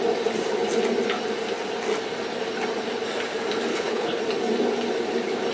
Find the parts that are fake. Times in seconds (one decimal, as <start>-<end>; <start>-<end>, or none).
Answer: 3.7-4.2